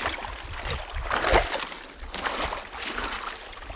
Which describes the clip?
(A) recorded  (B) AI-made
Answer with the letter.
A